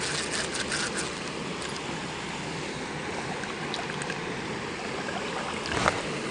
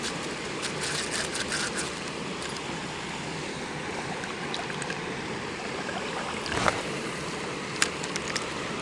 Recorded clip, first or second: first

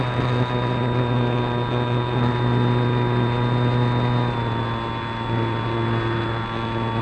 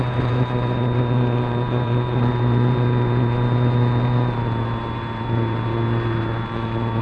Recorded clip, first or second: first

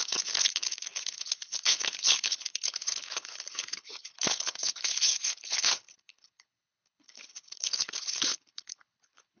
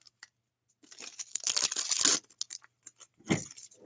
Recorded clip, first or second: second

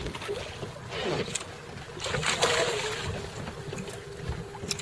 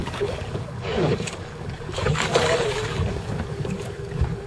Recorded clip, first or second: first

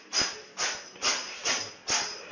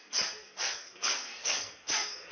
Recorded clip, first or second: first